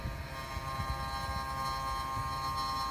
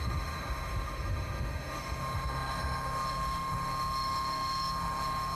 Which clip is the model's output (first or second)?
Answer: second